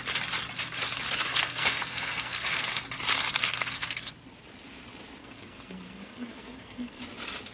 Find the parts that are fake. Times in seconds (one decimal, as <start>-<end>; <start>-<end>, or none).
1.3-2.8; 3.5-4.1; 5.2-7.0